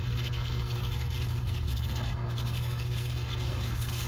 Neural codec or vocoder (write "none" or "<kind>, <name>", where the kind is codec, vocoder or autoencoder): codec, SNAC